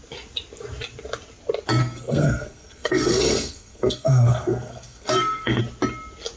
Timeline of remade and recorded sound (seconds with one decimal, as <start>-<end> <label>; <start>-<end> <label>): 0.0-1.8 recorded; 1.8-5.6 remade; 5.6-6.4 recorded